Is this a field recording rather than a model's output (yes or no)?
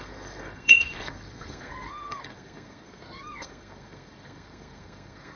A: no